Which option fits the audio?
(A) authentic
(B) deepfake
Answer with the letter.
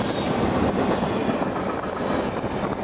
A